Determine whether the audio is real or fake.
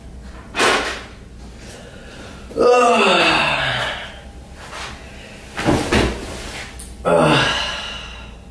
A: real